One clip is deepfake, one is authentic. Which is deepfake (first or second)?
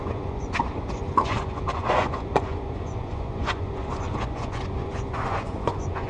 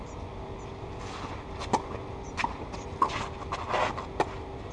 first